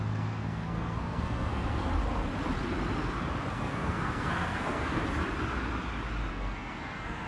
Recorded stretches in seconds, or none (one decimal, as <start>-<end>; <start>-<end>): 1.9-3.5; 5.0-6.3

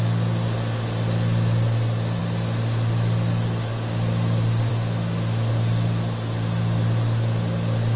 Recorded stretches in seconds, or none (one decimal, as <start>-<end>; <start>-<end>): 0.0-8.0